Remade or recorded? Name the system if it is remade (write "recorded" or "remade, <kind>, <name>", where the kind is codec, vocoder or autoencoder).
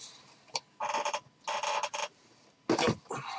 recorded